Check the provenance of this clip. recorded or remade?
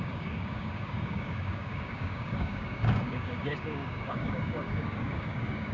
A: remade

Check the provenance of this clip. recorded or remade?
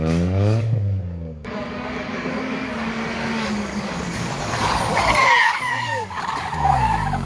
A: remade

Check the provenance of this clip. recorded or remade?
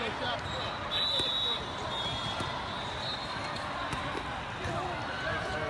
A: recorded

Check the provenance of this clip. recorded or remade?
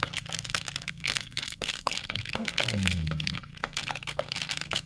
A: remade